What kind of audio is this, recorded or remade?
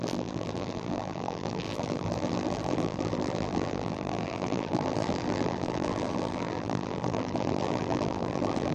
remade